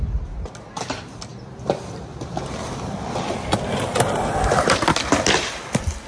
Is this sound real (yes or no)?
yes